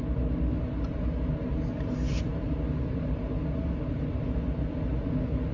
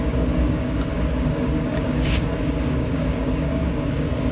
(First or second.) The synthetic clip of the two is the second